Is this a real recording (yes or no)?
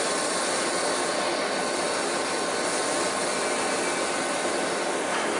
yes